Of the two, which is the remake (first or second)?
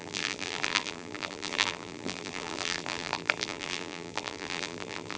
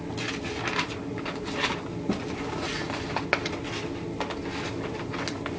first